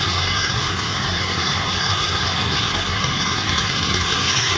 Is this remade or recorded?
remade